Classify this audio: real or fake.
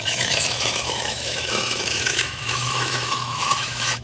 fake